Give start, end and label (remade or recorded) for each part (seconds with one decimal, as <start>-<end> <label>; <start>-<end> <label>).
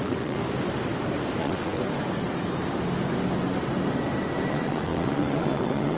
0.0-0.4 remade; 0.4-1.4 recorded; 1.4-1.8 remade; 1.8-4.5 recorded; 4.5-6.0 remade